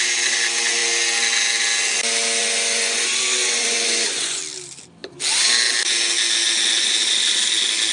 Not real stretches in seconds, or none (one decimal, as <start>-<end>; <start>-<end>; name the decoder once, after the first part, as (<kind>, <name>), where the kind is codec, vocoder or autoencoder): 2.4-4.4 (vocoder, Vocos)